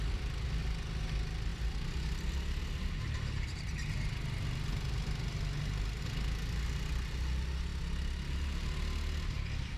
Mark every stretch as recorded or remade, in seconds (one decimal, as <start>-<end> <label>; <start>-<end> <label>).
0.0-9.8 recorded